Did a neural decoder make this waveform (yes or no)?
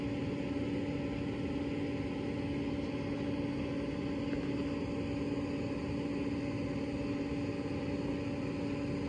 no